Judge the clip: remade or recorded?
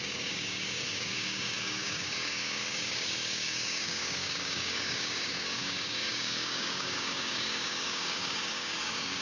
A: remade